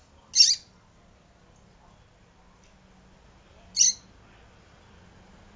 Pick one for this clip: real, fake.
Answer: real